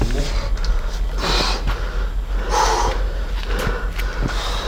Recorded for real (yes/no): yes